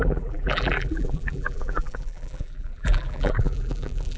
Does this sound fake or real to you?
fake